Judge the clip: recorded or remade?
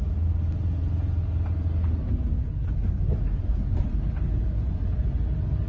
recorded